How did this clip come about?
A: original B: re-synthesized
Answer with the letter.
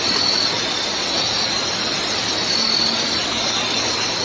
A